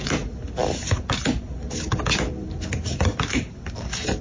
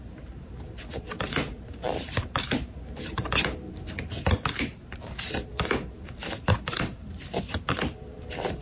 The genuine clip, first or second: first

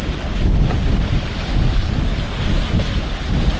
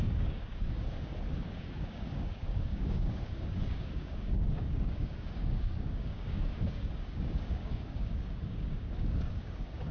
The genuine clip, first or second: first